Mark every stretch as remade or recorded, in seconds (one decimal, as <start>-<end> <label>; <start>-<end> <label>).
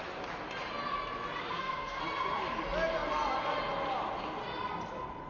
0.0-1.4 recorded; 1.4-2.0 remade; 2.0-5.3 recorded